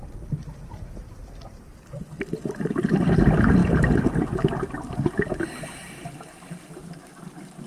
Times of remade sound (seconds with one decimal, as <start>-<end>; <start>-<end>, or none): none